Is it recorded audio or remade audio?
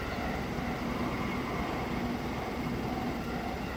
recorded